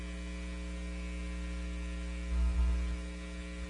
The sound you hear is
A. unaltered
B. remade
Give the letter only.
A